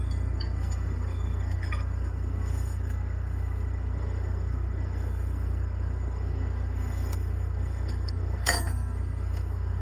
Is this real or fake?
fake